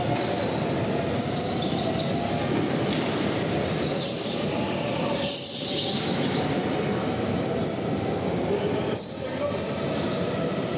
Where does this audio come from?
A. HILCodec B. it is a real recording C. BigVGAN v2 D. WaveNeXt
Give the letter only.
B